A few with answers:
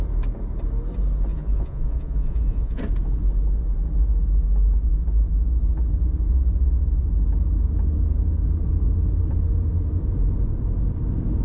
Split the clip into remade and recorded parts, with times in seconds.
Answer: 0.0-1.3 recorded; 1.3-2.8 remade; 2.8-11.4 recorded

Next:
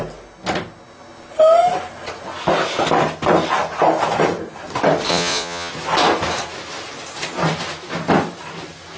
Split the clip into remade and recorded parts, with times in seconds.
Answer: 0.0-5.1 recorded; 5.1-5.7 remade; 5.7-9.0 recorded

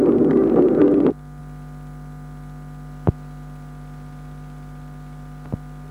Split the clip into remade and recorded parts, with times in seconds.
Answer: 0.0-5.9 recorded

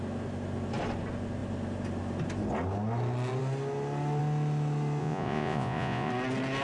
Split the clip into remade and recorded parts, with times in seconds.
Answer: 0.0-5.0 recorded; 5.0-6.1 remade; 6.1-6.6 recorded

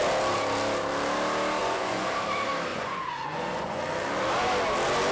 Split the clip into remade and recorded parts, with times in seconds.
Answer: 0.0-1.6 recorded; 1.6-2.1 remade; 2.1-2.7 recorded; 2.7-3.8 remade; 3.8-5.1 recorded

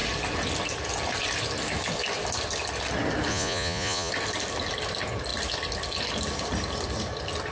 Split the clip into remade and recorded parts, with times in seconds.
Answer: 0.0-3.3 recorded; 3.3-4.1 remade; 4.1-7.5 recorded

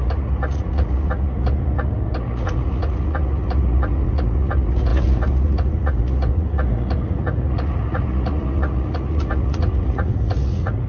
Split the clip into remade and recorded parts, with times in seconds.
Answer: 0.0-10.9 remade

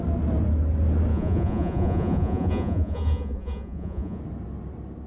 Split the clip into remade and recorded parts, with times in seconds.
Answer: 0.0-1.1 recorded; 1.1-4.2 remade; 4.2-5.1 recorded